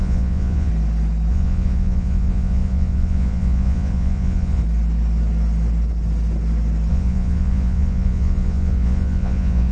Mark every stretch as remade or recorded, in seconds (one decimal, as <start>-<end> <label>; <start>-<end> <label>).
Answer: 0.0-0.7 remade; 0.7-1.3 recorded; 1.3-4.6 remade; 4.6-6.9 recorded; 6.9-9.7 remade